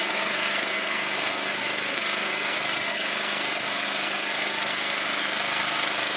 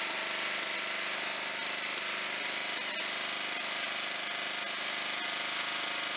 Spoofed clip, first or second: first